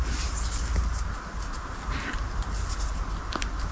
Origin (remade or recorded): recorded